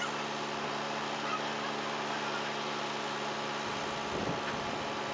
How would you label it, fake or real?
real